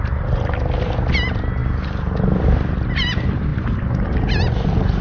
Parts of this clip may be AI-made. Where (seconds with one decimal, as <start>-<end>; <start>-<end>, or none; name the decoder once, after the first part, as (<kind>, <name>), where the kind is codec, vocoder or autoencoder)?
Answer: none